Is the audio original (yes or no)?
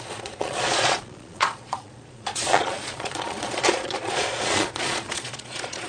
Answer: no